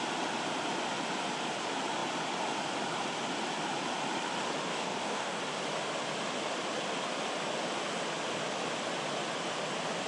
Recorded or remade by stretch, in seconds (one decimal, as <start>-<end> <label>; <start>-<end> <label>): 0.0-4.7 recorded; 4.7-5.4 remade; 5.4-10.1 recorded